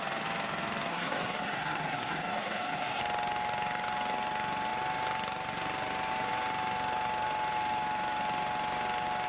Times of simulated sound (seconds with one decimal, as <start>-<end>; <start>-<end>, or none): 0.9-3.0